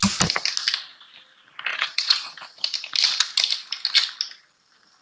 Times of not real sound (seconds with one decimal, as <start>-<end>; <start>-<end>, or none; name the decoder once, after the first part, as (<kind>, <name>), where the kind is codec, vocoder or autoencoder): 1.7-2.3 (vocoder, Vocos)